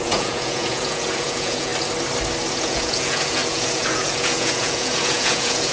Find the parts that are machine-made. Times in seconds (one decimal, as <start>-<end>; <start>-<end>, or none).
0.0-1.7; 2.5-5.7